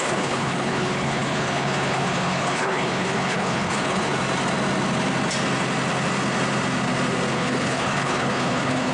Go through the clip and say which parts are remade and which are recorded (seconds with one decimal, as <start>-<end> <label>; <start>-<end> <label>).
0.0-4.1 remade; 4.1-7.3 recorded; 7.3-8.9 remade